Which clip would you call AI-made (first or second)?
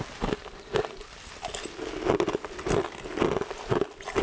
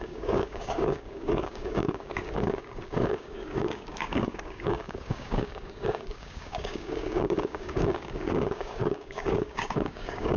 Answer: second